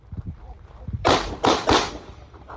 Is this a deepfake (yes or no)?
yes